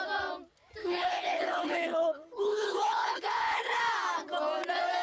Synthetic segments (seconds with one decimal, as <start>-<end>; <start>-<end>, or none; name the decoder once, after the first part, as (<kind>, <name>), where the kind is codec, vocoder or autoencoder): 0.8-3.8 (codec, HILCodec)